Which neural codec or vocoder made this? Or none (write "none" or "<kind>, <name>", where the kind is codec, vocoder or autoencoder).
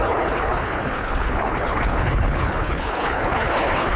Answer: codec, HILCodec